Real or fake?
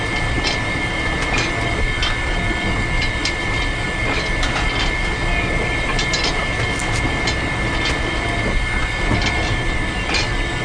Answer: real